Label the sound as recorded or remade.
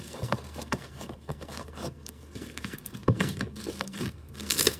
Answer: remade